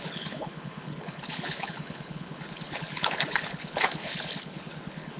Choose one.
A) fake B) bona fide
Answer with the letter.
A